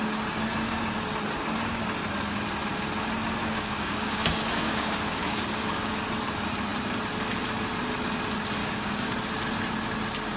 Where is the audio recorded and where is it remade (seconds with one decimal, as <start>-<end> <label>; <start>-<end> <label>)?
0.0-3.4 recorded; 3.4-6.0 remade; 6.0-8.6 recorded; 8.6-9.1 remade; 9.1-10.4 recorded